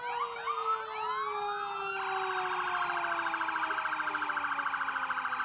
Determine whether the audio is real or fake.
real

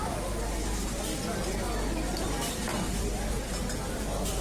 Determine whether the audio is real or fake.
real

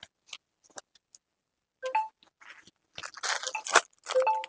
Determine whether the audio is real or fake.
real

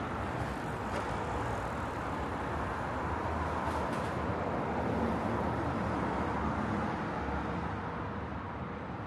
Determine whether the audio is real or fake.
fake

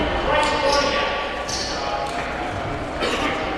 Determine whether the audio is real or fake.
real